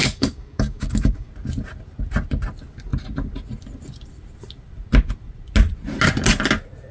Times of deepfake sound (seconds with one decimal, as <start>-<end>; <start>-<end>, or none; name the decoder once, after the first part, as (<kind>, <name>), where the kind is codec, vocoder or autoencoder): 0.0-1.3 (codec, DAC)